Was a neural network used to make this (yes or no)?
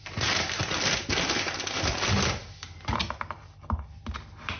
no